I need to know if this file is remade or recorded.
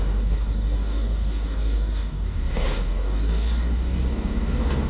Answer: remade